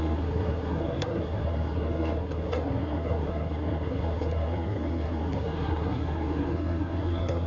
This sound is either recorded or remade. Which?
remade